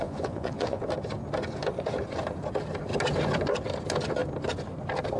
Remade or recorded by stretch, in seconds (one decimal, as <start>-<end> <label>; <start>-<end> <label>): 0.0-0.8 remade; 0.8-5.2 recorded